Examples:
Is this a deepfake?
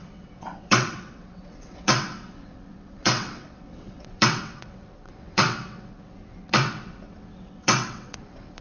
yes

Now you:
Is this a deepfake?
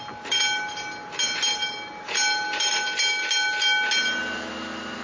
no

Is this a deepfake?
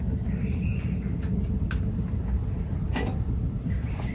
no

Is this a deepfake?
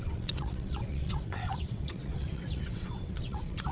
yes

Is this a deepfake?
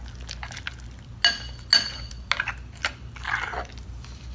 no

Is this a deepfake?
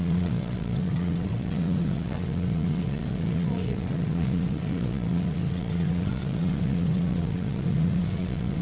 yes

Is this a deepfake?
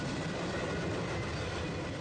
no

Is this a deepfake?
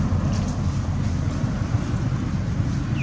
no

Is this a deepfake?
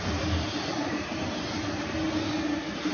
no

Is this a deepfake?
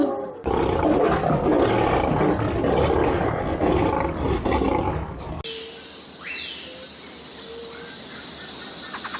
no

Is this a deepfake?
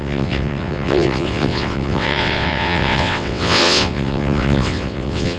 yes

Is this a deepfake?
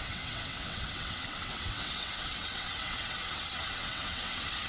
yes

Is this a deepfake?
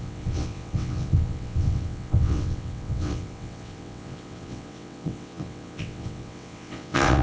yes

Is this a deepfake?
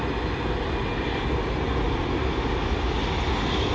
no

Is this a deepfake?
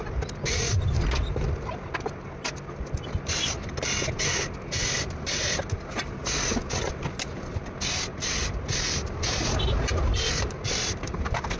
no